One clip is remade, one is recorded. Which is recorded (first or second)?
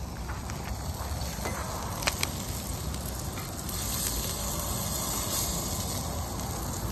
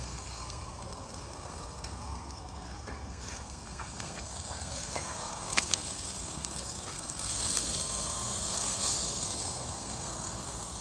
first